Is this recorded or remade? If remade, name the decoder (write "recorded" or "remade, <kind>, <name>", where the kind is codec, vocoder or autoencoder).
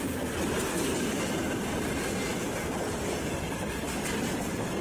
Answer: recorded